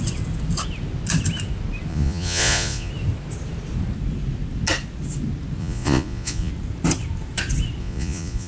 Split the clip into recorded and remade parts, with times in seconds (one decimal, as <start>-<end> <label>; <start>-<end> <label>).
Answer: 0.0-1.9 recorded; 1.9-2.9 remade; 2.9-5.6 recorded; 5.6-6.5 remade; 6.5-7.8 recorded; 7.8-8.5 remade